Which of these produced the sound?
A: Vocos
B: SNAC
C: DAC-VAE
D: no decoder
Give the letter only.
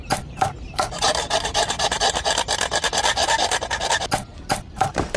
D